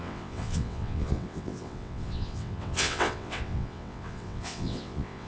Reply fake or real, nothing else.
fake